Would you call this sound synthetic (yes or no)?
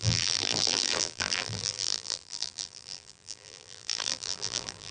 yes